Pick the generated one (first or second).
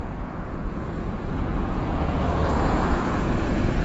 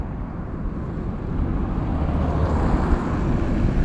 first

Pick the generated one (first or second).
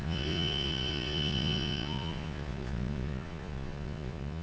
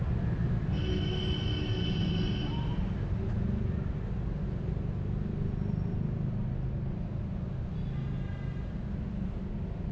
first